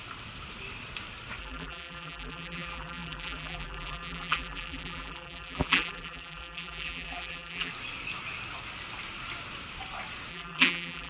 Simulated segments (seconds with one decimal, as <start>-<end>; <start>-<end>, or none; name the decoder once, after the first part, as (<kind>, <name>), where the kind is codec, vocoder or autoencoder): 1.4-7.7 (vocoder, BigVGAN v2); 10.3-11.1